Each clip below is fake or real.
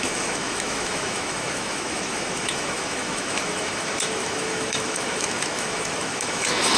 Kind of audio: fake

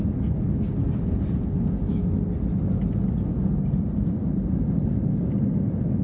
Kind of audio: real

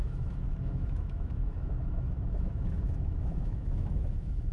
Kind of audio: fake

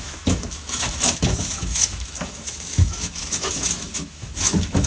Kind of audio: fake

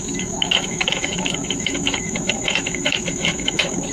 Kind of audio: fake